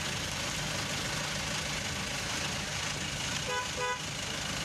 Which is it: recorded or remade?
recorded